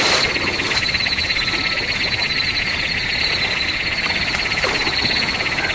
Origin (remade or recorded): remade